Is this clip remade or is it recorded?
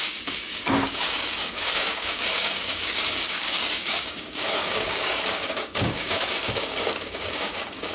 remade